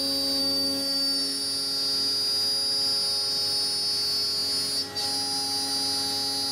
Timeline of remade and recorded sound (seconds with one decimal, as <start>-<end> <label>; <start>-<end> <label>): 0.0-0.4 recorded; 0.4-1.4 remade; 1.4-6.5 recorded